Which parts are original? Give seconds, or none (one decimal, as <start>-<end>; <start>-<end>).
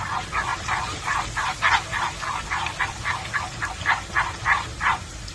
0.0-0.5; 3.7-5.3